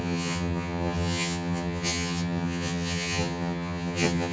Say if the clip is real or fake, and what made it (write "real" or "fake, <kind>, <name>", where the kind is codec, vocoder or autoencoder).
fake, vocoder, HiFi-GAN